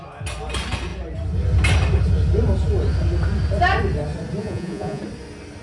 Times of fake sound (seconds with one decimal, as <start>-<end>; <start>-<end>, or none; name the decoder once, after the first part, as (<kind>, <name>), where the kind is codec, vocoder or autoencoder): 4.4-5.0 (vocoder, Vocos)